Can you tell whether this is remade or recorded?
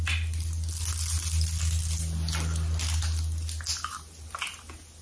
recorded